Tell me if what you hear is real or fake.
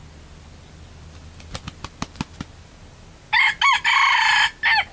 real